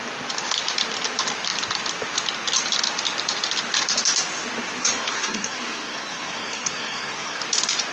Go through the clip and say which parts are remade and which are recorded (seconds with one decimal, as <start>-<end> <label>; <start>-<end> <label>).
0.0-4.8 recorded; 4.8-7.4 remade; 7.4-7.9 recorded